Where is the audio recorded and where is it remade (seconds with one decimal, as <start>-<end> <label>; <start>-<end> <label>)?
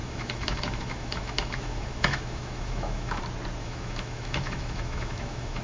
0.0-3.2 remade; 3.2-3.6 recorded; 3.6-5.6 remade